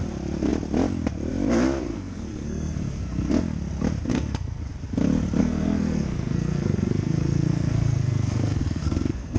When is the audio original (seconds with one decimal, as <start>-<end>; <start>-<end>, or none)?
0.0-1.9; 3.3-4.1; 4.6-5.4